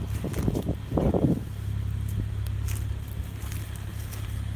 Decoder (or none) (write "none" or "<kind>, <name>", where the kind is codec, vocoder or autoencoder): none